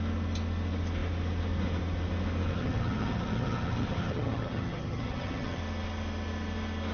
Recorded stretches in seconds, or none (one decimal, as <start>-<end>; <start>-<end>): 0.0-2.5; 5.6-6.9